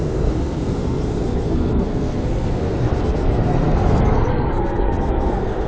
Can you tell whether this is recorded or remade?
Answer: remade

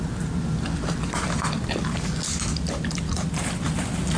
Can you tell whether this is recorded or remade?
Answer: recorded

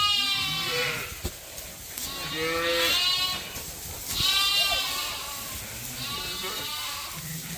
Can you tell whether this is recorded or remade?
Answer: recorded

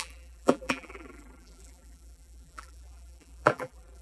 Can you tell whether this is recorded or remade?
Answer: remade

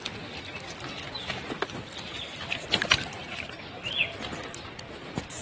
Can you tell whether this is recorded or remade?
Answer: recorded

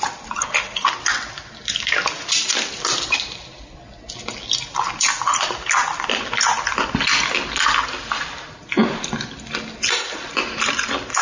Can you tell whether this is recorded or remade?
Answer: recorded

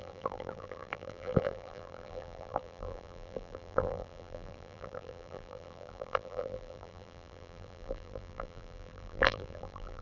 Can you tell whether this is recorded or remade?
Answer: remade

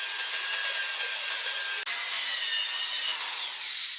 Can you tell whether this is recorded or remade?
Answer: recorded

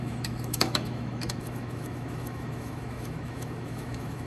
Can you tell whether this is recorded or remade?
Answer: remade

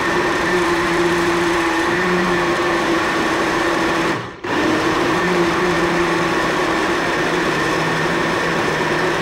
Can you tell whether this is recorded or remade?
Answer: remade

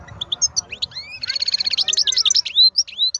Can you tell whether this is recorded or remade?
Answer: recorded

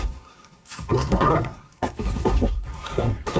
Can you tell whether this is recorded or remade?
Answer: remade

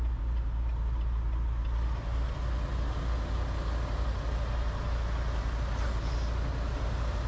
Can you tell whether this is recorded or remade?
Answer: recorded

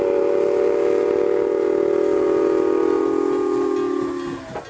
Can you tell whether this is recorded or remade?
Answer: recorded